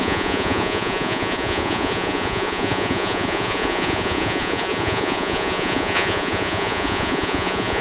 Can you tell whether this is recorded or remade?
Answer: remade